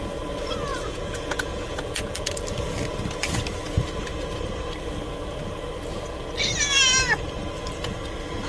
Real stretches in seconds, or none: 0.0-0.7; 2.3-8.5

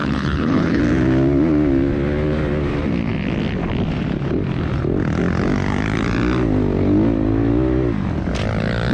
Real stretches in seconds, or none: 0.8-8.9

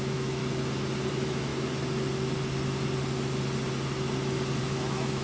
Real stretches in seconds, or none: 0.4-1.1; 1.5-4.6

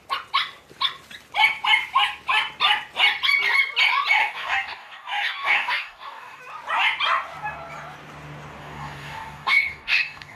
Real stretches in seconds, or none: 0.0-4.2; 6.4-8.6